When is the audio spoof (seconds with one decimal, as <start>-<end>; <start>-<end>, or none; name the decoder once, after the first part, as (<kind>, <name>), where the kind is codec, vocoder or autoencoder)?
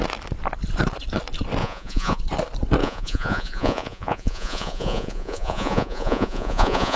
1.6-2.2 (vocoder, Vocos); 2.8-7.0